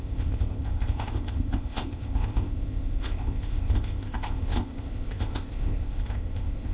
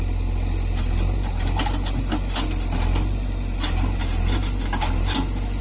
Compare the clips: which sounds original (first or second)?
second